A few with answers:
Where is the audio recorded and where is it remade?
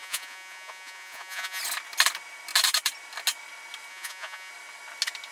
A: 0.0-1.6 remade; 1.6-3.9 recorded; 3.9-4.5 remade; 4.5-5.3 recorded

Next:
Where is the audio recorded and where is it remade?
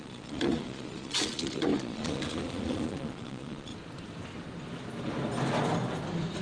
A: 0.0-3.7 remade; 3.7-6.4 recorded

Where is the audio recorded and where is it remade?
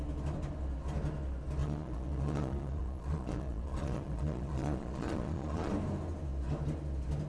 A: 0.0-1.6 recorded; 1.6-5.7 remade; 5.7-7.3 recorded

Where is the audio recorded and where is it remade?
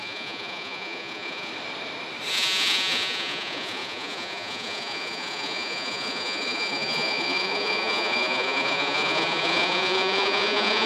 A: 0.0-1.5 remade; 1.5-2.3 recorded; 2.3-10.9 remade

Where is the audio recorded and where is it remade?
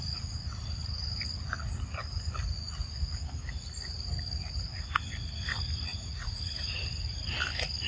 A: 0.0-5.9 recorded; 5.9-6.4 remade; 6.4-7.9 recorded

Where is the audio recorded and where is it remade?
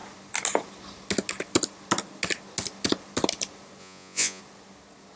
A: 0.0-3.8 recorded; 3.8-4.4 remade; 4.4-5.2 recorded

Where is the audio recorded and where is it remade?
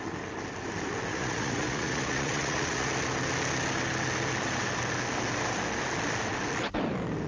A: 0.0-1.1 recorded; 1.1-2.9 remade; 2.9-7.3 recorded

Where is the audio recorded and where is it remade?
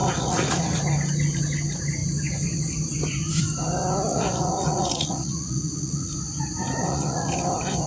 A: 0.0-0.8 remade; 0.8-4.1 recorded; 4.1-6.1 remade; 6.1-6.8 recorded; 6.8-7.3 remade; 7.3-7.9 recorded